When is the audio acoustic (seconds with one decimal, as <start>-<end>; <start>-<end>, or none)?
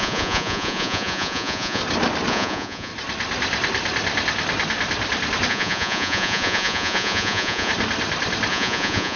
1.8-2.3; 2.9-5.5; 7.7-8.5